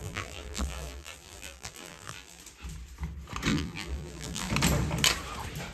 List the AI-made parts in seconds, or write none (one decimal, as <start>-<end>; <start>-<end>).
0.0-2.4; 3.5-4.5